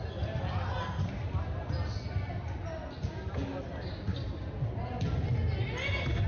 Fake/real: real